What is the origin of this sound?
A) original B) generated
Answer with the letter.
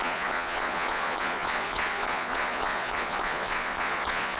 B